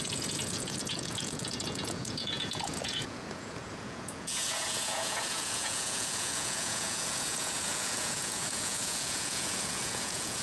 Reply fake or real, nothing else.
fake